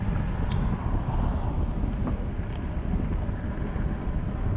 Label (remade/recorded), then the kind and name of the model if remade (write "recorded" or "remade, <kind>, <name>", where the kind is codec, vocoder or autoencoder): recorded